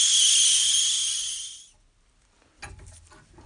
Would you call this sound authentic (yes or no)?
yes